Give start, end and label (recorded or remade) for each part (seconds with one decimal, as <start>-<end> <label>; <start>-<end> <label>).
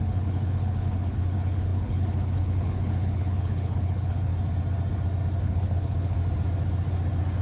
0.0-4.3 remade; 4.3-5.4 recorded; 5.4-6.2 remade; 6.2-7.4 recorded